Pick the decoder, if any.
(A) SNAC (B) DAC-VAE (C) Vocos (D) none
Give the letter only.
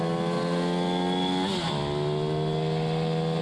D